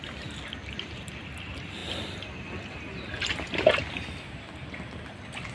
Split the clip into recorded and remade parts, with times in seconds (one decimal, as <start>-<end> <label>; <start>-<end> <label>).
0.0-5.5 recorded